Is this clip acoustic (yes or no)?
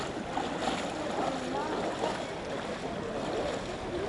yes